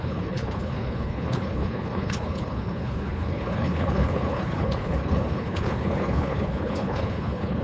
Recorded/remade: remade